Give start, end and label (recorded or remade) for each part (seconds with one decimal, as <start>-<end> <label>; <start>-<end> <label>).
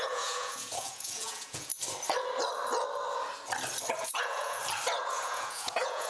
0.0-1.7 remade; 1.7-4.0 recorded; 4.0-4.6 remade; 4.6-5.1 recorded; 5.1-6.1 remade